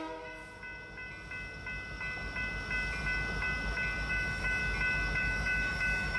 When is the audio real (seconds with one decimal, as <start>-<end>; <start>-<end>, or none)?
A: 0.4-4.1; 4.6-5.2